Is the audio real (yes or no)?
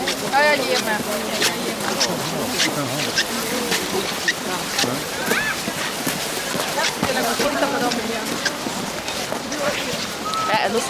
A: yes